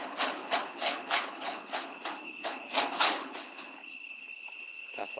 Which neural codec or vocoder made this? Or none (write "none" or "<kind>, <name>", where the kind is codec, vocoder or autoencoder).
codec, HILCodec